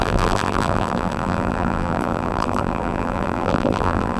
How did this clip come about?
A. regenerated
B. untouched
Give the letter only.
A